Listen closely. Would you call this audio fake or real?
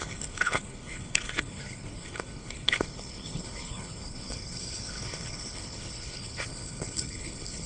fake